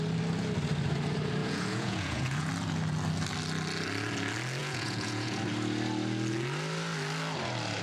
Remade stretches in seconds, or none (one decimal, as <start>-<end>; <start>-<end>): 1.4-2.5; 4.6-5.4